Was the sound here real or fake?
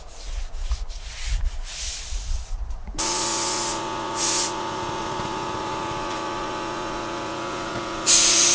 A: fake